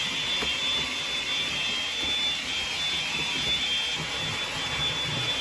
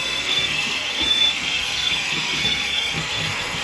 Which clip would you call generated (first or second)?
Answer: second